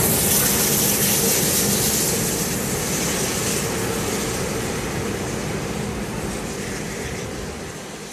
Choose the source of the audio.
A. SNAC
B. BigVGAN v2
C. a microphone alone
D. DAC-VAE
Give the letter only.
C